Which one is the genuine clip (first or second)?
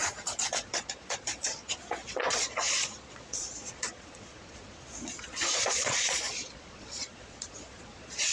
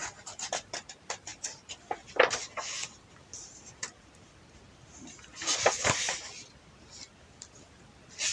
second